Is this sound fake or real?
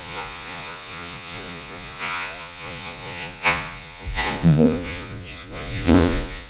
fake